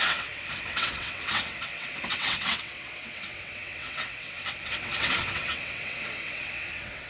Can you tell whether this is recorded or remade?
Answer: remade